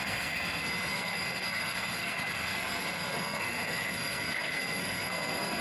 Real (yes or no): no